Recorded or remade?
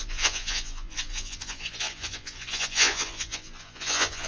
remade